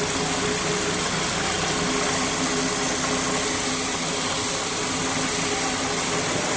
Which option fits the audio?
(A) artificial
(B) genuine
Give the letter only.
B